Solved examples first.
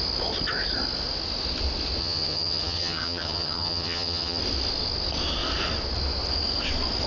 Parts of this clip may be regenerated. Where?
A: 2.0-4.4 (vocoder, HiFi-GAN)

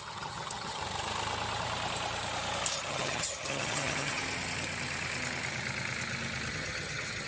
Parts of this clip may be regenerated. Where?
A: 0.0-0.8 (vocoder, HiFi-GAN); 2.9-4.2; 6.5-7.3